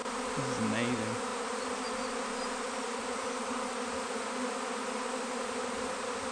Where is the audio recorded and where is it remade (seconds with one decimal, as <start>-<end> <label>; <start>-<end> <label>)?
0.0-6.3 recorded